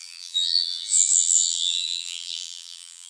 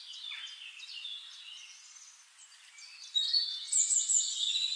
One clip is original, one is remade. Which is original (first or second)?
second